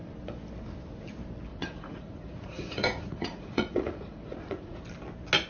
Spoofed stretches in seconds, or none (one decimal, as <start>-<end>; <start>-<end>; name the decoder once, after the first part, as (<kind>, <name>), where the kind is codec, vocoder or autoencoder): 1.5-4.8 (vocoder, Vocos)